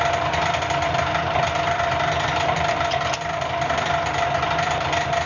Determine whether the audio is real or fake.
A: real